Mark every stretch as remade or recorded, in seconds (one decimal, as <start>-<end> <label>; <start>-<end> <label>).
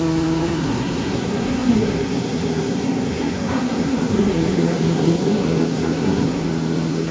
0.0-7.1 remade